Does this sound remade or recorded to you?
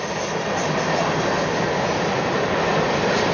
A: recorded